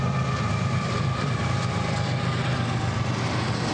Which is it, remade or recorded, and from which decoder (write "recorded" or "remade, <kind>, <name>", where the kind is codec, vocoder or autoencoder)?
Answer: remade, vocoder, BigVGAN v2